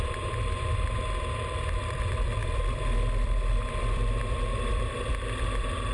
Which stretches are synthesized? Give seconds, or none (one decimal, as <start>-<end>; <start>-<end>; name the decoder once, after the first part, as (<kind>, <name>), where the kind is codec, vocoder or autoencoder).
0.0-5.9 (vocoder, BigVGAN v2)